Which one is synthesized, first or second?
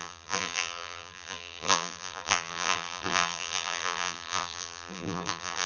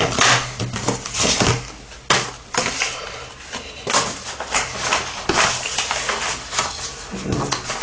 first